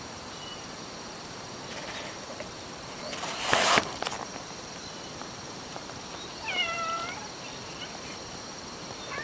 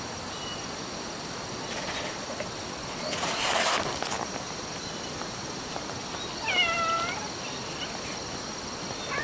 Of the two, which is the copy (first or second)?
first